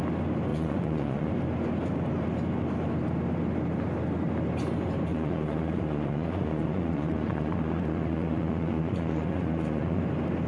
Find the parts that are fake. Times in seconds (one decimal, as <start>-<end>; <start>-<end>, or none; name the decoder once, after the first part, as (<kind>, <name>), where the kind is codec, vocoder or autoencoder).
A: 0.5-1.3 (vocoder, Vocos); 5.1-10.0